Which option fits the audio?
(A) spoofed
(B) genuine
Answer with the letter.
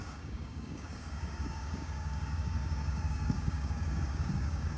A